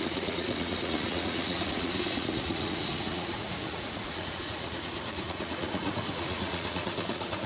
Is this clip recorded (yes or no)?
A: no